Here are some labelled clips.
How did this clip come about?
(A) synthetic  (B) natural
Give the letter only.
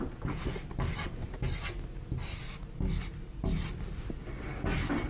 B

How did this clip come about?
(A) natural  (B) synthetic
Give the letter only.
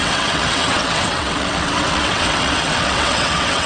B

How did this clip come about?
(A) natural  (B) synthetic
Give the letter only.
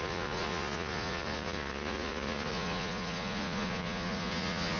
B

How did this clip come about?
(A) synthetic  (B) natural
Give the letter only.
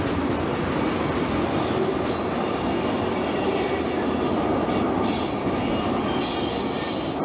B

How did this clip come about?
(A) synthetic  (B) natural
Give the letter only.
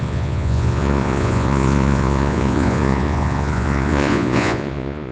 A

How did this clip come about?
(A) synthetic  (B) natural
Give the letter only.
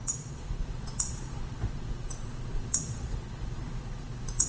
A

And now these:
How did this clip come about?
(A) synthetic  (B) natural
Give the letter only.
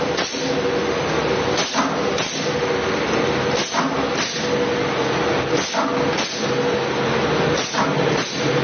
B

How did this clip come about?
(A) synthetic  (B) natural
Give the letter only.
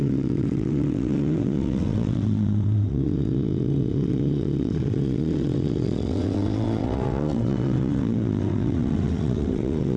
A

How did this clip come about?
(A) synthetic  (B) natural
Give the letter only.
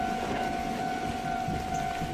B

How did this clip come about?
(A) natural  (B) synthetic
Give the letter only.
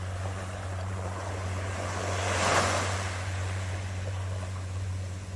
B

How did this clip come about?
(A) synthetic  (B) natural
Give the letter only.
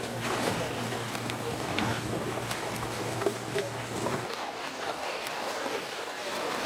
A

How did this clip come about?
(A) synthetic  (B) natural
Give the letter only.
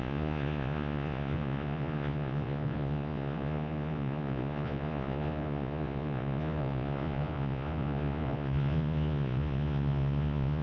A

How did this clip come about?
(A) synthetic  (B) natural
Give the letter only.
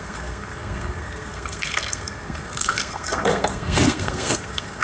A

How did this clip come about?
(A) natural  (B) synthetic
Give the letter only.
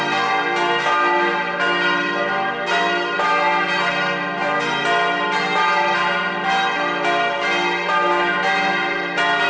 A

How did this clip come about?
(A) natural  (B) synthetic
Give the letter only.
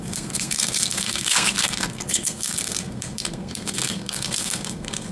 B